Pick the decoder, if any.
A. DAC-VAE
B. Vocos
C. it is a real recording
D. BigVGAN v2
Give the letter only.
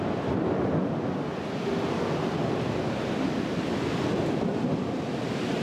C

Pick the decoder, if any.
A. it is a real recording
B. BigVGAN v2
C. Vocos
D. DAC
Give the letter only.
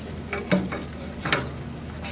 A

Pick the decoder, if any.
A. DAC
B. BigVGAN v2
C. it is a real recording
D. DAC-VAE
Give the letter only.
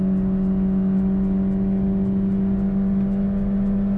C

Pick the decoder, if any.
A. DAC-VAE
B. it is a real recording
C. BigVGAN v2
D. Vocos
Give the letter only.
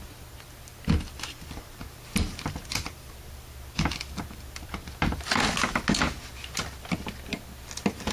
B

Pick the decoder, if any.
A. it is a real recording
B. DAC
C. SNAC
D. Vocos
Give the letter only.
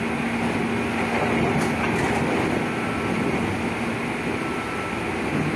A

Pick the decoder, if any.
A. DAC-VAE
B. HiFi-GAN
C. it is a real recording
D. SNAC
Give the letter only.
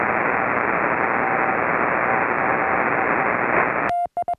C